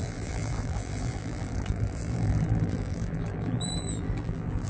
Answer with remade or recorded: remade